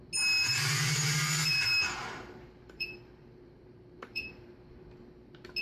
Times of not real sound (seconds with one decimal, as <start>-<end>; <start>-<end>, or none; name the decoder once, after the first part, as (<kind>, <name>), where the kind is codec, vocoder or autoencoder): 2.0-4.5 (vocoder, BigVGAN v2)